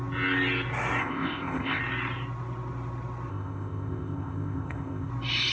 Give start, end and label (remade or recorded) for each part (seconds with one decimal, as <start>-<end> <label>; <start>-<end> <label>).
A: 0.0-1.0 recorded; 1.0-1.8 remade; 1.8-3.3 recorded; 3.3-5.1 remade; 5.1-5.5 recorded